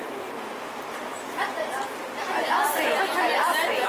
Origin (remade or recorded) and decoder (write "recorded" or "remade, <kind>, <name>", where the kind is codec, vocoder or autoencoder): recorded